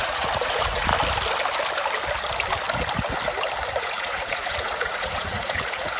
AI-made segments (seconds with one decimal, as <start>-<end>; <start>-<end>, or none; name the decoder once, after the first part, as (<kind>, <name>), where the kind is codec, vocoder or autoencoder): 0.0-0.9 (vocoder, Vocos); 3.8-6.0